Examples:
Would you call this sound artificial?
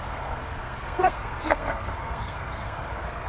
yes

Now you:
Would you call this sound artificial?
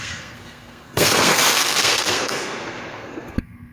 yes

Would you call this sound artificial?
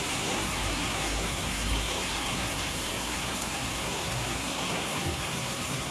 yes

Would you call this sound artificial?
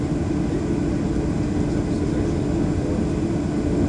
no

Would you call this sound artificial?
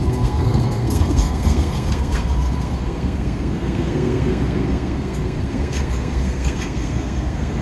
yes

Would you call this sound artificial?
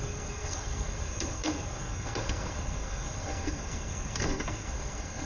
yes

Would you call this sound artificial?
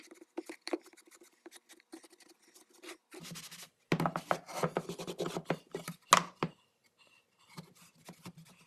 no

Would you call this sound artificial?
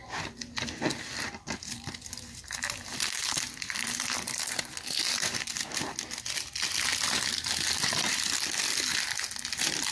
no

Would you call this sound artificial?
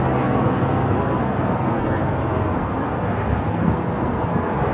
yes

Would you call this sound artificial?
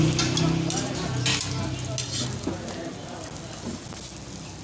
no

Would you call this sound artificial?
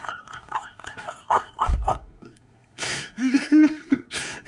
yes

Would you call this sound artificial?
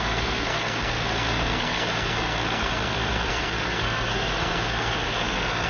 yes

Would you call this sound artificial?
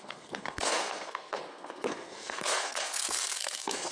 yes